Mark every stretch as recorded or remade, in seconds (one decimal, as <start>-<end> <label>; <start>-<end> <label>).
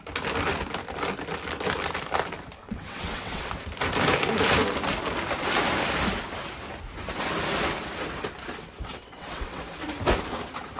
0.0-2.6 recorded; 2.6-3.5 remade; 3.5-8.9 recorded; 8.9-9.6 remade; 9.6-10.8 recorded